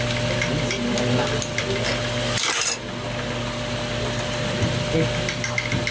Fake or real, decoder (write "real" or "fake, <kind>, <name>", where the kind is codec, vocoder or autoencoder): real